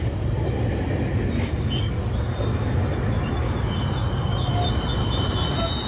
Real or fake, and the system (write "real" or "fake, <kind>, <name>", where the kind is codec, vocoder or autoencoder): real